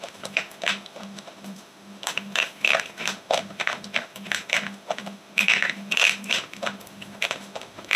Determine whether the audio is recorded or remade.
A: remade